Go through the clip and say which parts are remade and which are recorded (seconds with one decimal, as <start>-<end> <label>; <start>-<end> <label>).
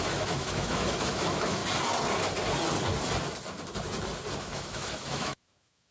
0.0-1.6 remade; 1.6-4.4 recorded; 4.4-5.9 remade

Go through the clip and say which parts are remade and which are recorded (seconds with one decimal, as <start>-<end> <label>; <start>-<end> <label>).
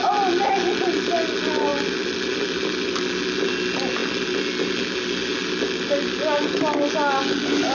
0.0-1.7 recorded; 1.7-3.0 remade; 3.0-7.7 recorded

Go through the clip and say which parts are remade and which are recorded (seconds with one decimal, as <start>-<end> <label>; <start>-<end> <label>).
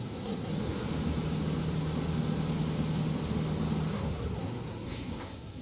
0.0-0.5 remade; 0.5-3.9 recorded; 3.9-5.6 remade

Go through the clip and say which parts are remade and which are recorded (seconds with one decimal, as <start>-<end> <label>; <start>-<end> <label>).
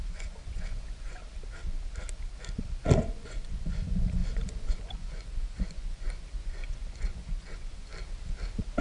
0.0-1.2 remade; 1.2-3.0 recorded; 3.0-7.9 remade; 7.9-8.8 recorded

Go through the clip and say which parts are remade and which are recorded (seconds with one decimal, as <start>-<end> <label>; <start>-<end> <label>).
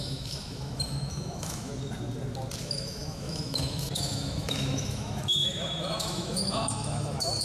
0.0-1.7 remade; 1.7-2.6 recorded; 2.6-7.4 remade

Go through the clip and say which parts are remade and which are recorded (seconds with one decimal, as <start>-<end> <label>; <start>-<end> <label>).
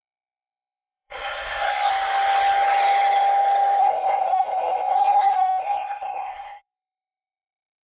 0.0-1.9 remade; 1.9-3.8 recorded; 3.8-7.8 remade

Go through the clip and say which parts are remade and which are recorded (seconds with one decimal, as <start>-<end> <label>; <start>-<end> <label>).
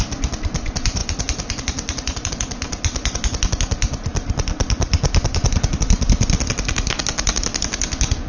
0.0-1.0 recorded; 1.0-2.3 remade; 2.3-4.1 recorded; 4.1-7.0 remade; 7.0-8.3 recorded